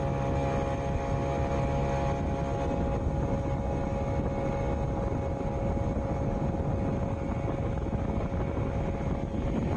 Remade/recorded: recorded